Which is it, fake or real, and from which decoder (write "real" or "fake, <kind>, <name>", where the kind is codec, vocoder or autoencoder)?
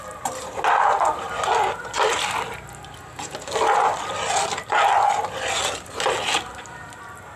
real